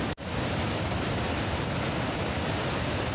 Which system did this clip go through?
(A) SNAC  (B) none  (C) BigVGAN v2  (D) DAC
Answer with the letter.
B